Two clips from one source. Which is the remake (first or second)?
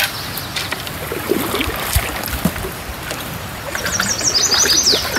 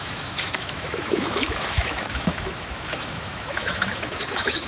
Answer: second